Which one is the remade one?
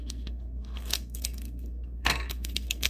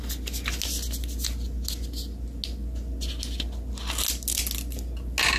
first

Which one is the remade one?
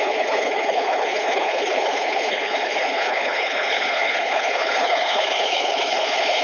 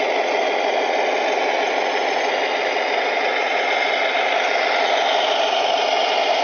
first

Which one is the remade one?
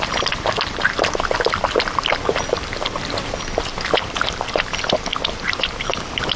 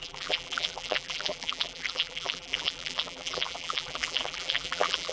second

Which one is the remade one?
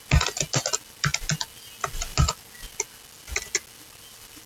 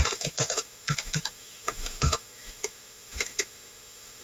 second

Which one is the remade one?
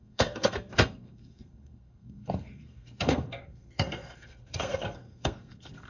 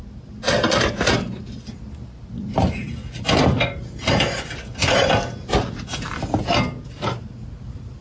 first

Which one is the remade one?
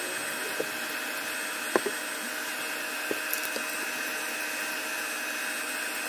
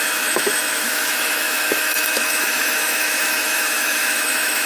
second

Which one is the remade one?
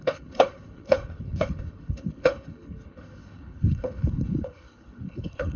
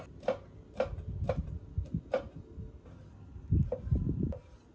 first